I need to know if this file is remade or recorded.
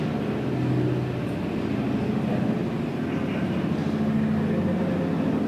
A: recorded